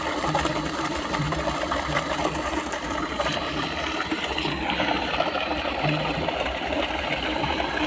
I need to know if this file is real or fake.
fake